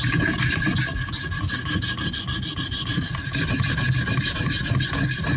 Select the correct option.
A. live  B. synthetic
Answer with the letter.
A